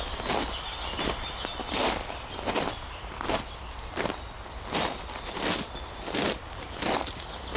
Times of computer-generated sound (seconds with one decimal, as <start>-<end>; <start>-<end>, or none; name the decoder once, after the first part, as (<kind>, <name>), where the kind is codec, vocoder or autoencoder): none